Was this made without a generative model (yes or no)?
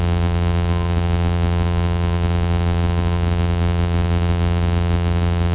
no